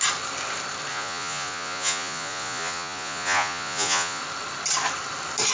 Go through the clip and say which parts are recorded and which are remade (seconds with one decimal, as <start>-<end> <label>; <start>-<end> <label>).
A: 0.0-0.9 recorded; 0.9-4.2 remade; 4.2-5.5 recorded